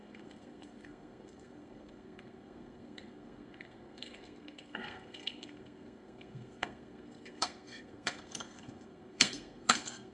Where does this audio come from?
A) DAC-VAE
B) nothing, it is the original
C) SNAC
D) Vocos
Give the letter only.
C